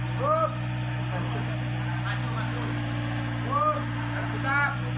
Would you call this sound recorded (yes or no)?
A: yes